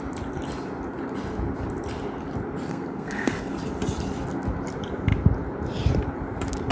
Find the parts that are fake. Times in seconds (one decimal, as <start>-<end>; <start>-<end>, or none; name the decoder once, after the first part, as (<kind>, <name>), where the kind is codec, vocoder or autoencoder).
2.7-3.5 (codec, SNAC)